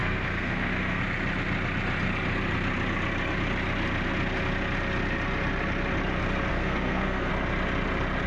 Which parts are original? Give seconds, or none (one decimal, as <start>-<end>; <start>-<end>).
1.0-6.5; 7.3-8.3